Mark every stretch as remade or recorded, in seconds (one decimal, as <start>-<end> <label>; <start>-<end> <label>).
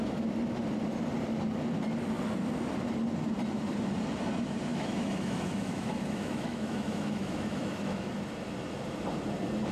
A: 0.0-4.7 recorded; 4.7-8.1 remade; 8.1-9.7 recorded